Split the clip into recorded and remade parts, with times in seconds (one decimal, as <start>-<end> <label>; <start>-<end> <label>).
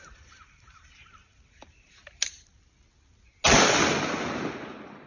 0.0-2.0 remade; 2.0-5.1 recorded